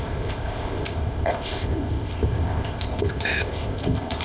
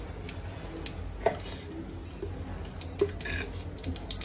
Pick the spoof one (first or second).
first